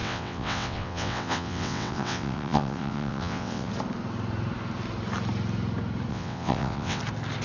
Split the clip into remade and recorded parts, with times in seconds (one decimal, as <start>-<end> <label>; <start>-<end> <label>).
0.0-3.7 remade; 3.7-6.1 recorded; 6.1-7.0 remade; 7.0-7.4 recorded